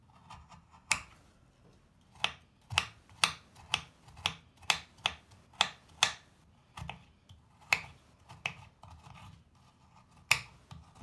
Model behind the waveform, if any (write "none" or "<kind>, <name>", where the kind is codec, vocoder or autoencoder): none